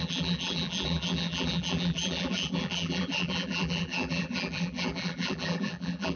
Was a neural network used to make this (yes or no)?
yes